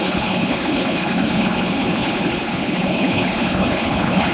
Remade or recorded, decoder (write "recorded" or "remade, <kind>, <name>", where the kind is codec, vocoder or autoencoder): remade, codec, HILCodec